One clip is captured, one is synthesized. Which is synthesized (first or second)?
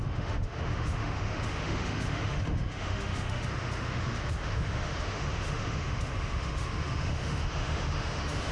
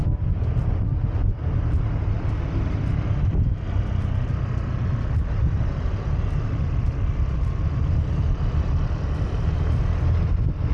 first